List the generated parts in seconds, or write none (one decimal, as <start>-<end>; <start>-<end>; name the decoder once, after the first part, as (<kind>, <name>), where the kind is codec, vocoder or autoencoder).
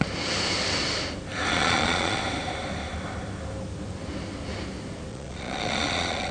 1.5-2.2 (vocoder, Vocos); 5.1-6.3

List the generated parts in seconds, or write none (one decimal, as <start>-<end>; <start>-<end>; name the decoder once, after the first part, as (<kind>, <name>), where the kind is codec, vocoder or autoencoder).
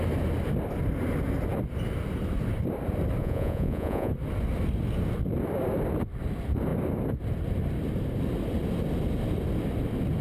3.2-4.1 (vocoder, Vocos)